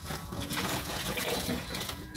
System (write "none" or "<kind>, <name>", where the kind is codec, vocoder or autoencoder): vocoder, Vocos